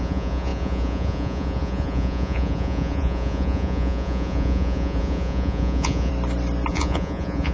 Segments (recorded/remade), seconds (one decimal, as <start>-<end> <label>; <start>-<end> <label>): 0.0-6.1 remade; 6.1-6.7 recorded; 6.7-7.5 remade